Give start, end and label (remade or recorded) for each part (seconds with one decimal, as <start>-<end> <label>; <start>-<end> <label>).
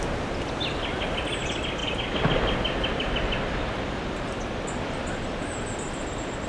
0.0-6.5 recorded